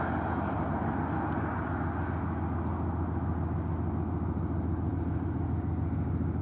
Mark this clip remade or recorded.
recorded